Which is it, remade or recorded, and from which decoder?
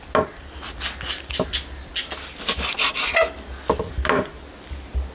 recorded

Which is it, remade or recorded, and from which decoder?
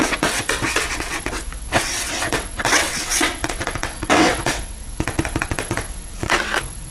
remade, vocoder, WaveNeXt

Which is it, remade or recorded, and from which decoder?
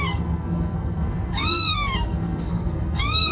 remade, codec, SNAC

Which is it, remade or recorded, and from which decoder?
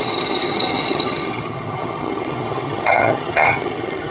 remade, vocoder, HiFi-GAN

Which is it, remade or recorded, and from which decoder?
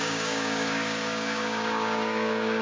remade, codec, DAC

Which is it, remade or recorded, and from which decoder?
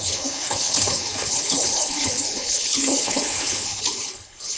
remade, codec, HILCodec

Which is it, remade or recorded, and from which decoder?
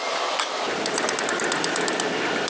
recorded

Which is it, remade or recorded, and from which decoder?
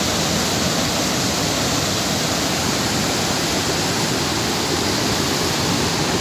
remade, vocoder, BigVGAN v2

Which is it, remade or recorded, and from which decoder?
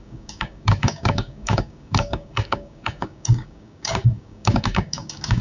remade, codec, DAC